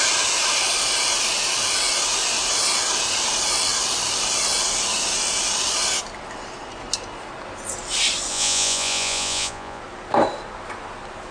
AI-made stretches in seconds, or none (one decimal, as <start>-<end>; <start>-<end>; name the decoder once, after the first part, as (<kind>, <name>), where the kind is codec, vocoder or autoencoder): 8.3-9.8 (vocoder, Vocos)